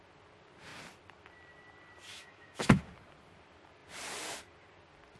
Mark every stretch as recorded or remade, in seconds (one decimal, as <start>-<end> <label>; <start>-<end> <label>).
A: 0.0-2.1 recorded; 2.1-2.8 remade; 2.8-5.2 recorded